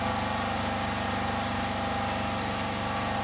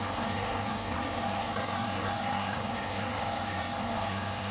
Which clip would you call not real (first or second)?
second